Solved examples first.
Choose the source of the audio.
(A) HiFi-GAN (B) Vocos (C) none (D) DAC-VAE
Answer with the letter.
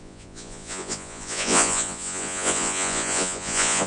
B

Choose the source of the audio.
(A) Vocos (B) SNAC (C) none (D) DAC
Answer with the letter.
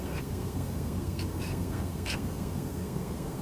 B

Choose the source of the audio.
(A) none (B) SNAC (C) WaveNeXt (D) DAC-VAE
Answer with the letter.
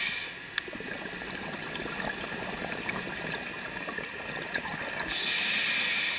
A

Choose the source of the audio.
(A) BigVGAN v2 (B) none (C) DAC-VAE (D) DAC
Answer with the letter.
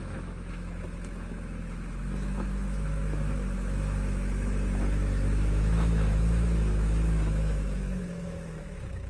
C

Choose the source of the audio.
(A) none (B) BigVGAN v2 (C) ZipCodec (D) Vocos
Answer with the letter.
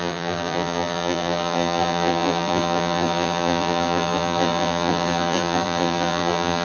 B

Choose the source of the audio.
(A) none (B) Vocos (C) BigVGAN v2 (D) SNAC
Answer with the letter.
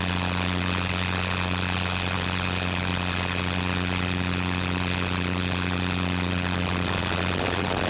A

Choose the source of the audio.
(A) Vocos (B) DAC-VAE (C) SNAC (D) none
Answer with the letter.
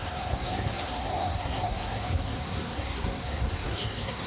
C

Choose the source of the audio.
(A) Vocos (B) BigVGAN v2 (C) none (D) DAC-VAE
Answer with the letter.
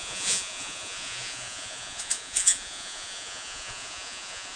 A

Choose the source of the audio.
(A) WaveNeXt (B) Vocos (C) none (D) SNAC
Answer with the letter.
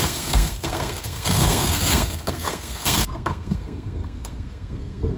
D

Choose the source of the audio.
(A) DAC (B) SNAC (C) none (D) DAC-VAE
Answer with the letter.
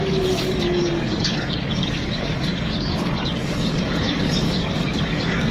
A